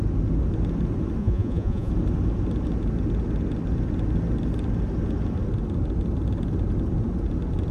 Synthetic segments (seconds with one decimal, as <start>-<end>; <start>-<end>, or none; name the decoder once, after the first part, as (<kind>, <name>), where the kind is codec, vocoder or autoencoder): 1.2-1.9 (vocoder, Vocos)